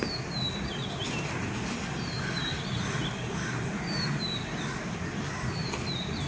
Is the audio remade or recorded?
recorded